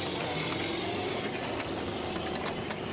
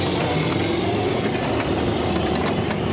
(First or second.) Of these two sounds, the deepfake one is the second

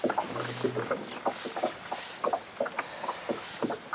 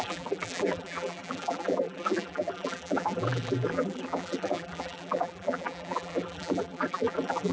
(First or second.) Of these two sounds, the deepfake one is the second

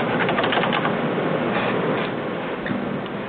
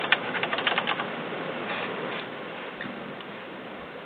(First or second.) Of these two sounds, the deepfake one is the second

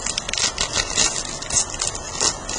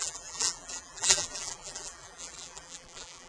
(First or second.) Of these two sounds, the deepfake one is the second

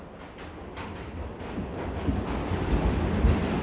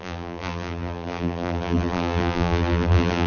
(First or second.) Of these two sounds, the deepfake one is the second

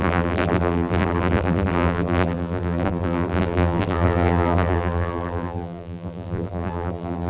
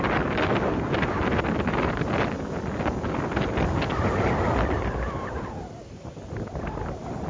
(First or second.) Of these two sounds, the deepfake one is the first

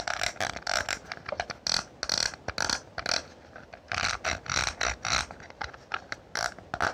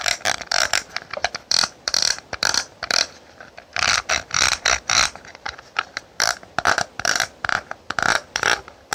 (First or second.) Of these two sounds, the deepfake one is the second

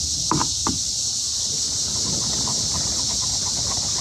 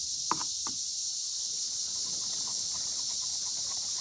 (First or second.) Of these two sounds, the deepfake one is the second